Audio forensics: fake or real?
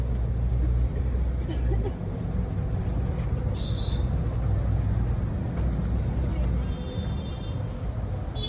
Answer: real